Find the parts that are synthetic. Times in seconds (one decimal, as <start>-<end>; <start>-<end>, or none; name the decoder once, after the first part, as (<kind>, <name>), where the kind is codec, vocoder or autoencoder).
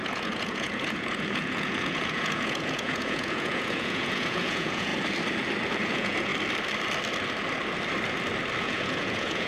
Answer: 0.0-4.9 (vocoder, Vocos); 5.8-6.3; 8.6-9.5